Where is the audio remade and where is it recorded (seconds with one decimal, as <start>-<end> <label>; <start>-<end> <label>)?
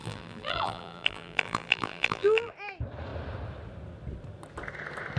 0.0-2.5 remade; 2.5-5.2 recorded